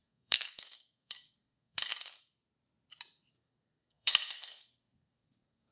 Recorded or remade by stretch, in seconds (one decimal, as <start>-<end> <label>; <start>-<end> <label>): 0.0-1.9 remade; 1.9-3.3 recorded; 3.3-5.7 remade